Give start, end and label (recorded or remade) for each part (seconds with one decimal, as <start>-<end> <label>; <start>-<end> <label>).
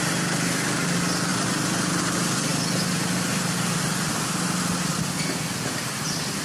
0.0-6.4 recorded